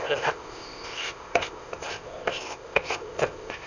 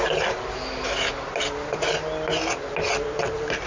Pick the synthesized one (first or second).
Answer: first